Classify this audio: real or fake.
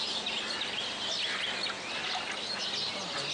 real